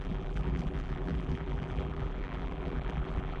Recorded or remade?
remade